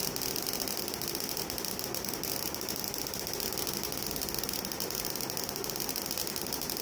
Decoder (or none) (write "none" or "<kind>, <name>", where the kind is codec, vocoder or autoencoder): none